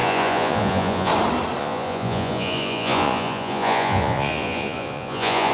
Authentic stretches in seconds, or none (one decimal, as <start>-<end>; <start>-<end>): 1.1-1.6